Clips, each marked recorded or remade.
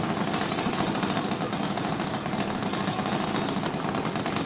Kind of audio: recorded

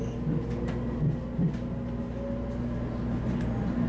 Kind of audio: recorded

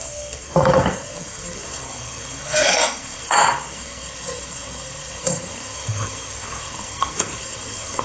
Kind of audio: remade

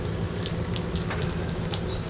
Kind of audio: recorded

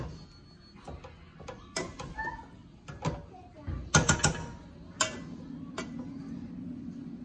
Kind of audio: recorded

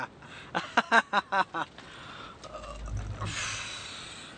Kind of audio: recorded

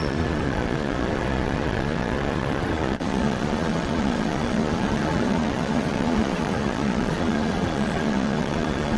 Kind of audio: remade